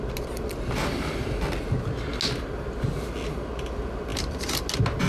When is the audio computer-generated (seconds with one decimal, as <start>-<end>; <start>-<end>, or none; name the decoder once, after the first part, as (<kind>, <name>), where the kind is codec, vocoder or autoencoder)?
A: none